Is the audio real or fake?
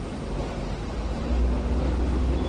real